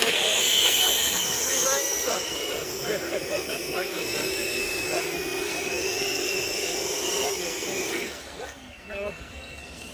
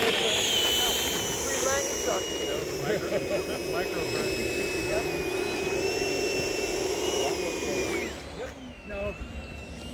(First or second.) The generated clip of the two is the first